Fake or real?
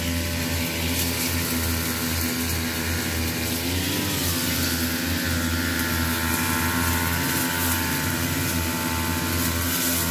real